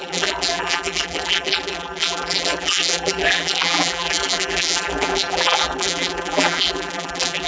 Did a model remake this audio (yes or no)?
yes